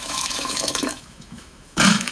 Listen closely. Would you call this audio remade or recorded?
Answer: remade